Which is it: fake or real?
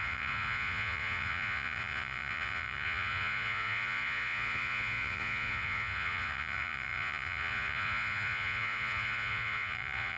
fake